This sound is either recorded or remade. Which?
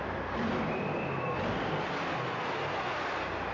recorded